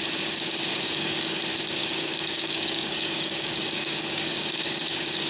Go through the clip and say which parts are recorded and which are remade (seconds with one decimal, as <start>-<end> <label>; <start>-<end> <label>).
0.0-0.7 recorded; 0.7-1.4 remade; 1.4-1.8 recorded; 1.8-5.3 remade